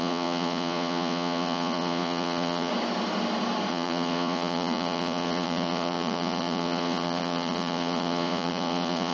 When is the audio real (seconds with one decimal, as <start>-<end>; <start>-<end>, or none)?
2.7-3.7